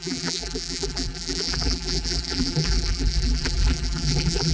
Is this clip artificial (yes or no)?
yes